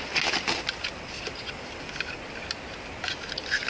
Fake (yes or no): no